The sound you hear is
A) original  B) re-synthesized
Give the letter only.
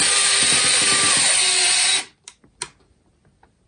A